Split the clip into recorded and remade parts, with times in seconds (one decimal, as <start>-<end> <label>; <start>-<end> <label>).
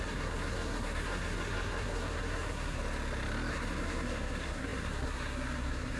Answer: 0.0-2.8 remade; 2.8-3.5 recorded; 3.5-6.0 remade